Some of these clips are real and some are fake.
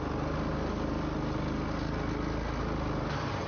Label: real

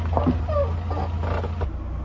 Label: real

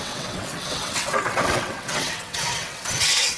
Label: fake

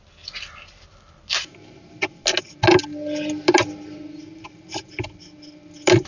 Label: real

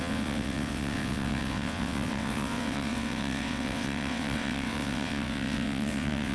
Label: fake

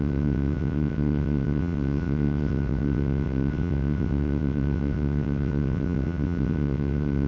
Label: fake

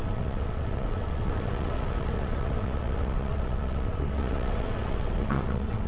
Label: fake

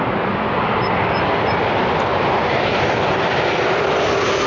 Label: real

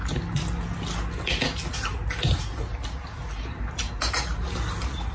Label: real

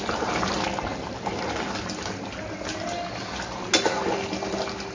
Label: real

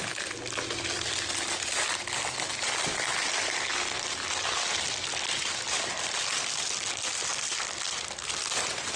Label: real